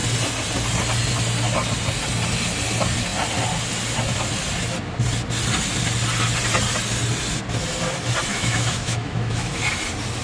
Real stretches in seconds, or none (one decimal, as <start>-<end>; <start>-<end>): 0.0-8.3; 9.6-10.2